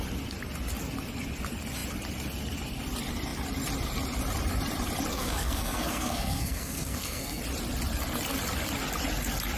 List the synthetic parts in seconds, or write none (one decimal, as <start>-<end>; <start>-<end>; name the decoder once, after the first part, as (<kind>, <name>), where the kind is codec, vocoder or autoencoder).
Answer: 5.1-7.4 (codec, SNAC)